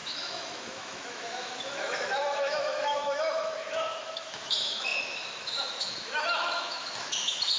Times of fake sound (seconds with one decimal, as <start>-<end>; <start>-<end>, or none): 0.0-7.6